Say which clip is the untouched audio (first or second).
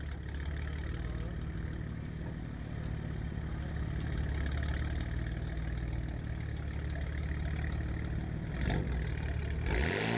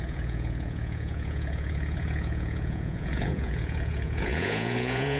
first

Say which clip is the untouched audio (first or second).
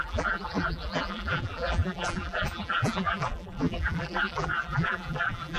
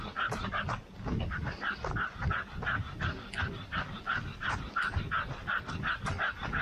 second